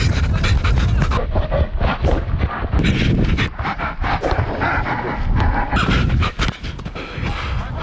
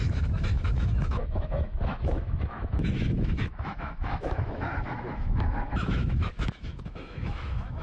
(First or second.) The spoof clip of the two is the second